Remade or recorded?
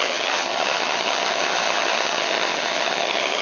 remade